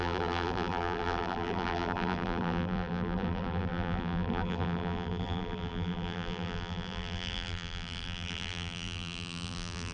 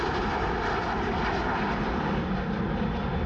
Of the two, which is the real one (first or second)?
second